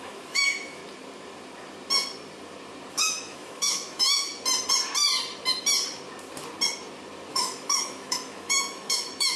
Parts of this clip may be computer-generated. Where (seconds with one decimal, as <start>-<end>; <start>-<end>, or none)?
0.0-0.8; 2.9-4.3; 7.3-9.4